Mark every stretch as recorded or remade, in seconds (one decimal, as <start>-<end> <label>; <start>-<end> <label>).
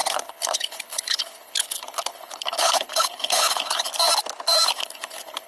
0.0-3.9 remade; 3.9-4.7 recorded; 4.7-5.5 remade